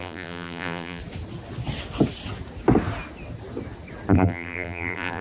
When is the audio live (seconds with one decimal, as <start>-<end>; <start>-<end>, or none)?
1.0-4.1